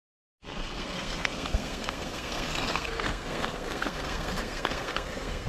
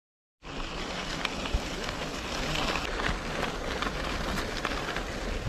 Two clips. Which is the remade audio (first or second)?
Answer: first